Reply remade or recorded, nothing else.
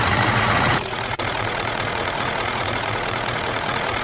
remade